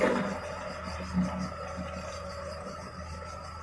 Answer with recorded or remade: recorded